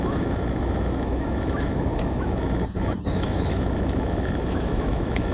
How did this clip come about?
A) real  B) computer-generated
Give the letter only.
B